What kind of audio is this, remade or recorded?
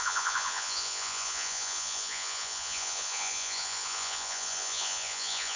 remade